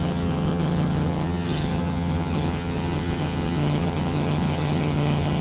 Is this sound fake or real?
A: fake